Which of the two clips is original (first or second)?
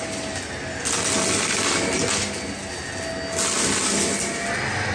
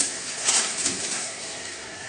first